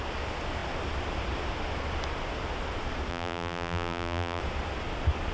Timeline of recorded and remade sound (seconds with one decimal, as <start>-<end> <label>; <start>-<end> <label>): 0.0-3.1 recorded; 3.1-4.4 remade; 4.4-5.3 recorded